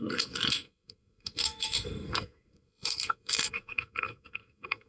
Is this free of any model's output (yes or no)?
no